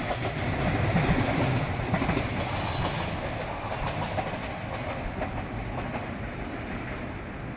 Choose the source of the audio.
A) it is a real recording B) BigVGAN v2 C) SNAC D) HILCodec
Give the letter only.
A